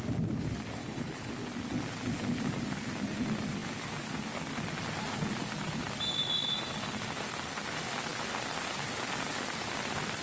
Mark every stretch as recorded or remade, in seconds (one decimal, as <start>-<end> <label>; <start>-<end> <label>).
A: 0.0-0.8 recorded; 0.8-1.3 remade; 1.3-10.2 recorded